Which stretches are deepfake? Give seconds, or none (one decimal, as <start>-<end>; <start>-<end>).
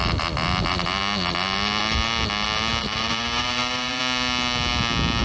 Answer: 2.8-4.0